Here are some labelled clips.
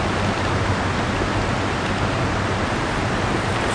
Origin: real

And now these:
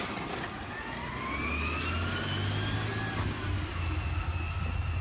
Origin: real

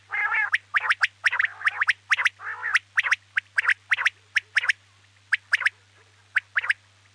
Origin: real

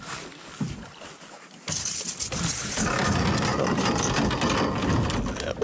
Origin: real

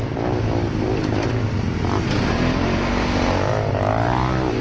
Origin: real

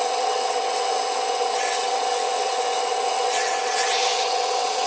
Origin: fake